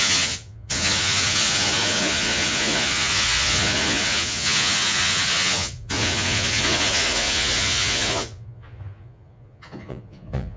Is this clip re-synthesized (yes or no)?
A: yes